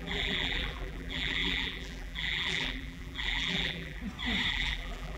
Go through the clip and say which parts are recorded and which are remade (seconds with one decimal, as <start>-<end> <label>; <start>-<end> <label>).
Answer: 0.0-4.0 remade; 4.0-4.5 recorded; 4.5-5.2 remade